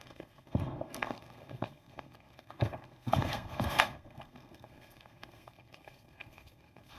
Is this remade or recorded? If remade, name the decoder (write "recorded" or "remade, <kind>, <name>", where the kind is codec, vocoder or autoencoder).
remade, codec, SNAC